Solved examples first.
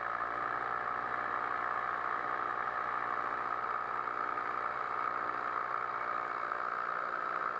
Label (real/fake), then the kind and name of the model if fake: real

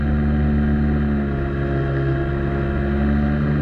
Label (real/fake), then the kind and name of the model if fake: real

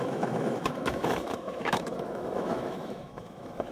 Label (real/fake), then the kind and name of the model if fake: fake, autoencoder, DAC-VAE